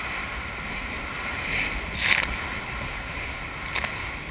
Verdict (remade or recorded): recorded